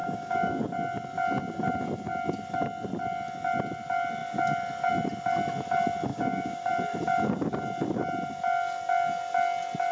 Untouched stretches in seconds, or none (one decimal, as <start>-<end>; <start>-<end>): 0.6-6.1; 6.7-9.9